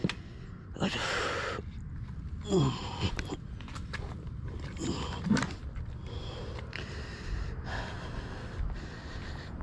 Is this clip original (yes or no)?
yes